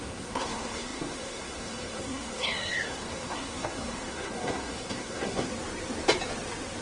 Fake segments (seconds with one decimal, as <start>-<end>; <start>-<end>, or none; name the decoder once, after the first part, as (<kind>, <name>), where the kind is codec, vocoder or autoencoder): 0.0-5.5 (codec, SNAC)